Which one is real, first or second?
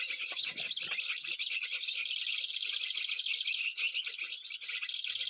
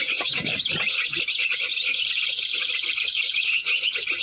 first